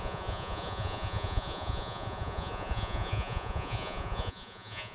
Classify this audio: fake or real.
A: fake